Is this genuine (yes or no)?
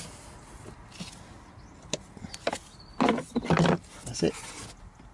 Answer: yes